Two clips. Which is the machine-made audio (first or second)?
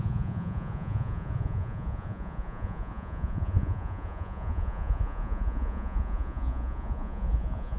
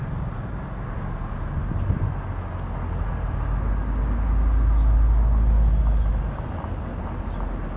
first